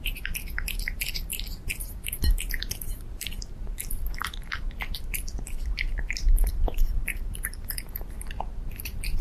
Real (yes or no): no